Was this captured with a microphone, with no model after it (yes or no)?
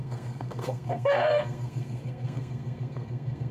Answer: no